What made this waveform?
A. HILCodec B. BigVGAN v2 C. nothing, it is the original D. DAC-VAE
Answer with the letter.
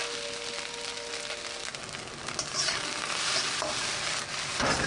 C